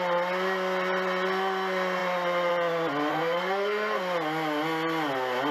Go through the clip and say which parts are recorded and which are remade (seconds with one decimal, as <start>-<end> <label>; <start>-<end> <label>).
0.0-3.1 recorded; 3.1-4.0 remade; 4.0-5.5 recorded